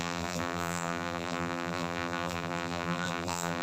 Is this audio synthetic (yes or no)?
yes